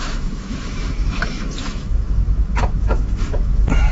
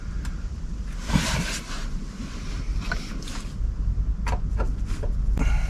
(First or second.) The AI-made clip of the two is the first